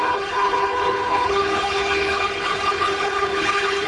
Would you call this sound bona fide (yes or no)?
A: no